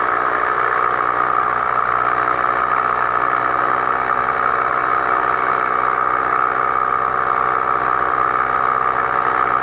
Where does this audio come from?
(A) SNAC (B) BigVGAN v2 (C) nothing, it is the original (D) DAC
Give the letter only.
C